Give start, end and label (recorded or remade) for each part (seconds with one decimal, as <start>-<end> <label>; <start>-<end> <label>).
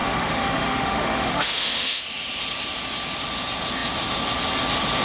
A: 0.0-2.0 remade; 2.0-5.0 recorded